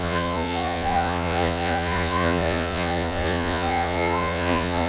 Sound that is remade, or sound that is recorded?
remade